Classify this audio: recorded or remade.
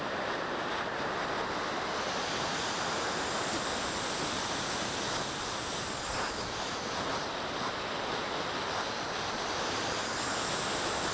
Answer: recorded